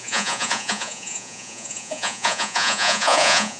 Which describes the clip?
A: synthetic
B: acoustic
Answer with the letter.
A